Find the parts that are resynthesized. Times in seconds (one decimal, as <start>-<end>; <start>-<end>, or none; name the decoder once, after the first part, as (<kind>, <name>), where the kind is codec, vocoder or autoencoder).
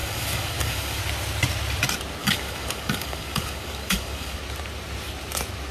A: 0.0-1.0 (codec, DAC); 2.2-4.4